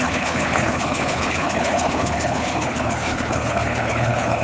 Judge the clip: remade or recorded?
remade